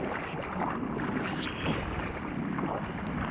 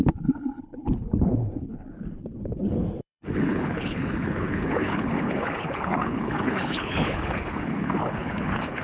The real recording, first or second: first